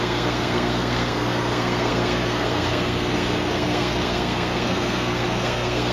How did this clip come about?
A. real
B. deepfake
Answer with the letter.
B